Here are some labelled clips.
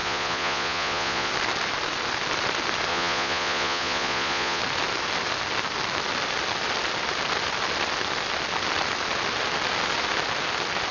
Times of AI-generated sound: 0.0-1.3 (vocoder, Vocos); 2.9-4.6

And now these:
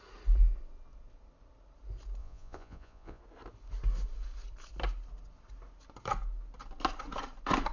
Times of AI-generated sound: 2.2-3.2 (vocoder, Vocos)

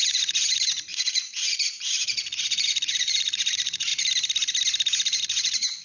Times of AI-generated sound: 0.0-3.9 (vocoder, Vocos); 5.2-5.8

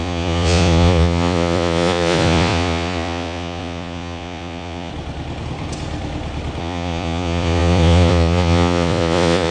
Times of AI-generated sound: 0.0-4.9 (vocoder, Vocos); 6.6-9.5

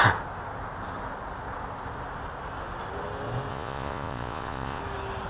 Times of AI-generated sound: 3.5-4.8 (vocoder, Vocos)